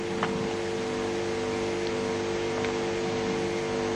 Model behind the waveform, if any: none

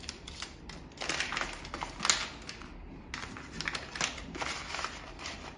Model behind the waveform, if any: none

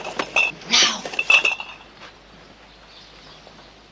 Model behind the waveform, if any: none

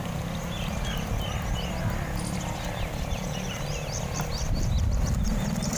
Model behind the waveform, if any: none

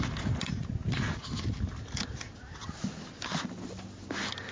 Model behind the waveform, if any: none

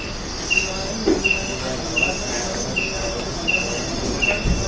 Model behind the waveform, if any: none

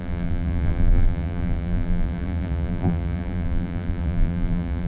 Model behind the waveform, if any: vocoder, BigVGAN v2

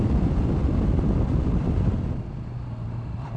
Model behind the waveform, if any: none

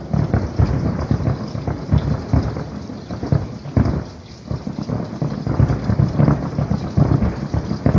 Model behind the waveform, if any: none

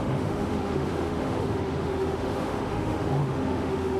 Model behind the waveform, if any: autoencoder, DAC-VAE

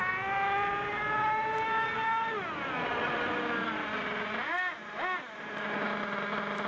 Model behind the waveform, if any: none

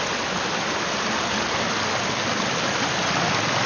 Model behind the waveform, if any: none